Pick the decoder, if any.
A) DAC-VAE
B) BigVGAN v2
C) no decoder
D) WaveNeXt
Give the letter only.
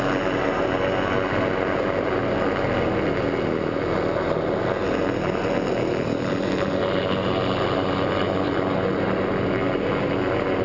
C